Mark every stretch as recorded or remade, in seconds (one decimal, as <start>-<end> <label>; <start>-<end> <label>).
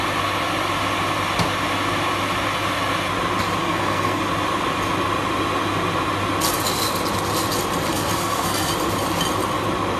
0.0-3.6 recorded; 3.6-4.2 remade; 4.2-7.9 recorded; 7.9-8.7 remade; 8.7-10.0 recorded